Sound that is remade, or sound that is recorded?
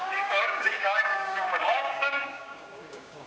remade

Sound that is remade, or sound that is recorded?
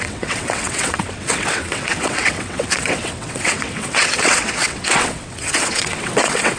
remade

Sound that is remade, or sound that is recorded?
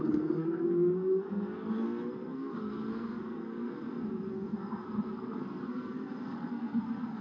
remade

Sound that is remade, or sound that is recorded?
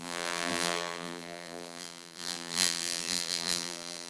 remade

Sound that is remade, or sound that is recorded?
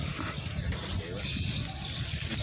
recorded